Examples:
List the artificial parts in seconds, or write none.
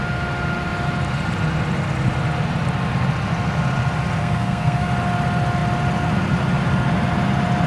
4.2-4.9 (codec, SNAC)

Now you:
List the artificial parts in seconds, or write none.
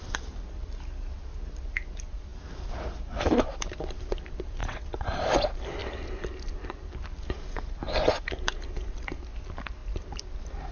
4.6-5.2 (vocoder, WaveNeXt)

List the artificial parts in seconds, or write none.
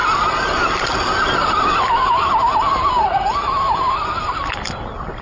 none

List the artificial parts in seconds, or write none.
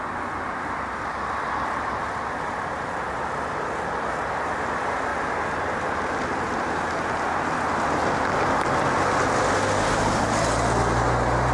none